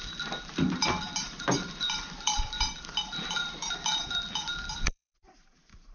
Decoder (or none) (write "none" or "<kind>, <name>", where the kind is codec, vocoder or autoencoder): vocoder, BigVGAN v2